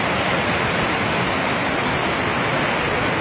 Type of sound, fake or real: real